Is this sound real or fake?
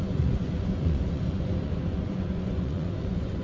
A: fake